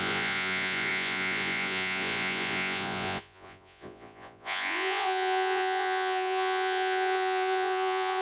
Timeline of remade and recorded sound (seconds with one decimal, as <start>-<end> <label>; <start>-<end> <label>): 0.0-8.2 remade